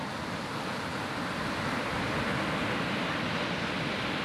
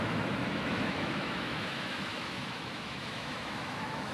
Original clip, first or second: first